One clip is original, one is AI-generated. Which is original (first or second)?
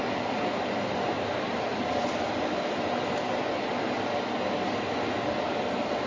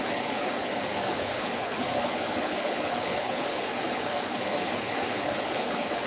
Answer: first